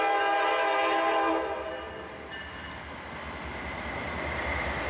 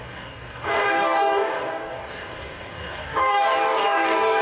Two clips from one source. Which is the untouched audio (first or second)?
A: first